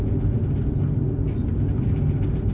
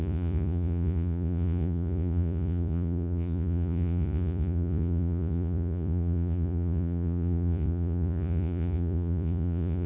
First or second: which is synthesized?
second